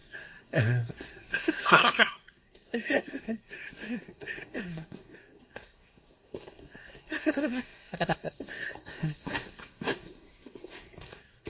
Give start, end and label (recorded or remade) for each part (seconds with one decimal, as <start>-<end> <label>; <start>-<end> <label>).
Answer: 0.0-11.5 remade